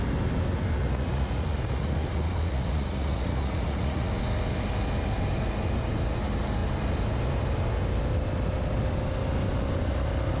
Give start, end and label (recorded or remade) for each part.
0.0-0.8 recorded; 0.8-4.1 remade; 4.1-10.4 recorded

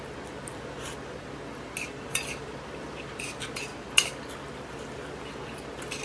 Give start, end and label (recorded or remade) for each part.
0.0-6.0 recorded

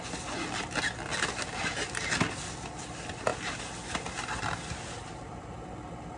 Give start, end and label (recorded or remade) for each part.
0.0-6.2 recorded

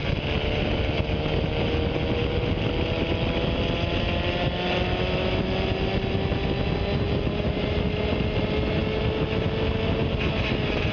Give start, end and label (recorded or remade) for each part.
0.0-10.9 recorded